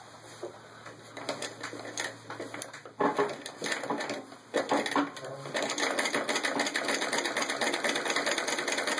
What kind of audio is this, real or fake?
real